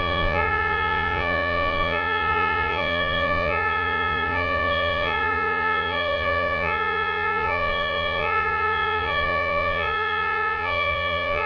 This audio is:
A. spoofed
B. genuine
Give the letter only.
A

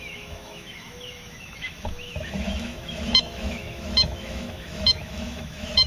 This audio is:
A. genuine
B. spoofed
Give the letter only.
B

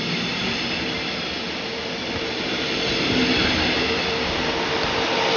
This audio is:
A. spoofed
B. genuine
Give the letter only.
B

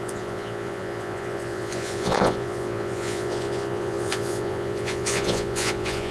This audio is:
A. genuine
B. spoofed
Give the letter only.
B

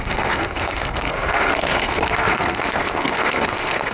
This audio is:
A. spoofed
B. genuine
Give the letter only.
A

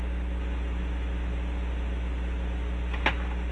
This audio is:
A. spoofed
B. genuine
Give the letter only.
B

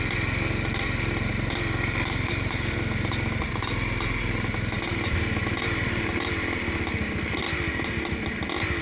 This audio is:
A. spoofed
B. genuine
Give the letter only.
B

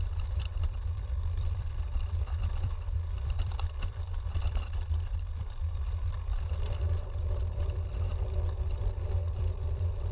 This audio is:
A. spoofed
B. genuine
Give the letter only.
A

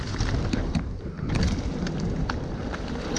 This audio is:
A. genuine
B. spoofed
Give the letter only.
A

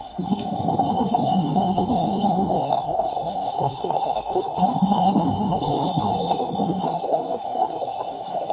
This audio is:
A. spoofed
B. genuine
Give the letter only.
A